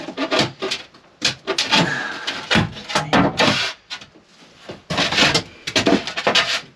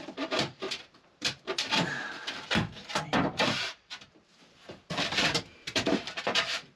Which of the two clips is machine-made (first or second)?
second